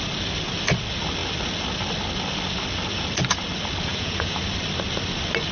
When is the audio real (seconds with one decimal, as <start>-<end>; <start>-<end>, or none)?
0.0-3.9; 4.4-5.5